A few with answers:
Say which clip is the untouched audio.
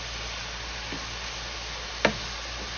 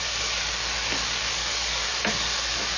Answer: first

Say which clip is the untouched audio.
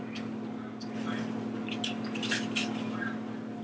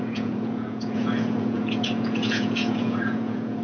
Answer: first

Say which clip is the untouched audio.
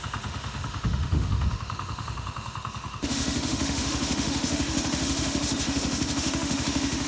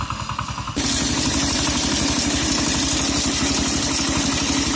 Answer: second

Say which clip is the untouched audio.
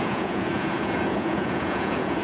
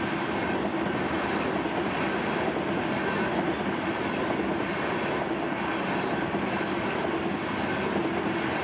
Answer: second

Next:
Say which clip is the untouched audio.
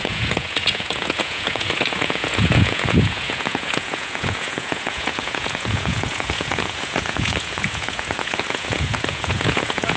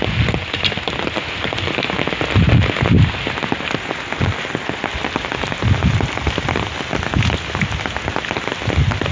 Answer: second